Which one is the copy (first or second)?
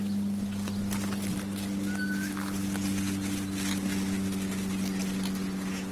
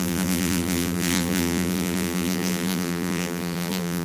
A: second